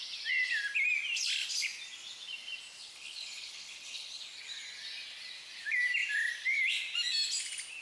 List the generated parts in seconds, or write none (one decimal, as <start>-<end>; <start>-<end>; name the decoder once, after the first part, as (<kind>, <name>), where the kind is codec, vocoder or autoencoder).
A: 2.8-4.2 (codec, HILCodec)